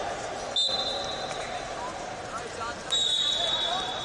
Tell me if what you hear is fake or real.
real